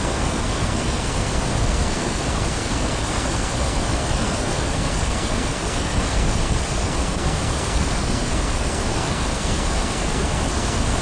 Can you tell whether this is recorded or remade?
remade